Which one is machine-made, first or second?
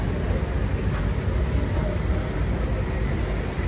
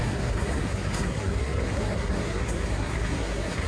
second